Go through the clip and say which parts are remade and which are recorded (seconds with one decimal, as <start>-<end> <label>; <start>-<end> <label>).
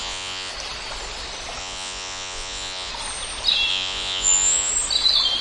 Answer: 0.0-0.5 remade; 0.5-1.6 recorded; 1.6-2.9 remade; 2.9-3.7 recorded; 3.7-4.7 remade; 4.7-5.4 recorded